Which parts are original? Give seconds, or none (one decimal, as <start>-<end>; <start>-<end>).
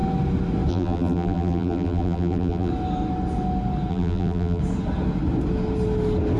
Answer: 0.0-0.7; 2.7-3.9; 4.6-6.4